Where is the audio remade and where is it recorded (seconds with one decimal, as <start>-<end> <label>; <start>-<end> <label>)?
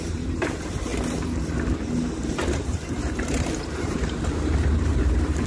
0.0-0.9 remade; 0.9-2.3 recorded; 2.3-5.5 remade